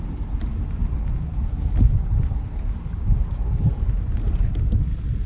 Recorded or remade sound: recorded